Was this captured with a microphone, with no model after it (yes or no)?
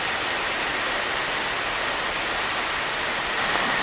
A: yes